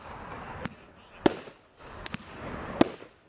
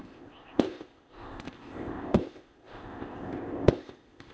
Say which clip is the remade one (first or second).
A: second